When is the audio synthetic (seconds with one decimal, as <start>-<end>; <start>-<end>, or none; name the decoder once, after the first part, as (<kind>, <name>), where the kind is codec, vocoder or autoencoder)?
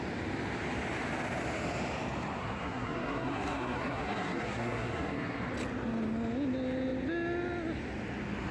2.4-5.5 (codec, SNAC)